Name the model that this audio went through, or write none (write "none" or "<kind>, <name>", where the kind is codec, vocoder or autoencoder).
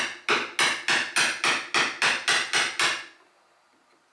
none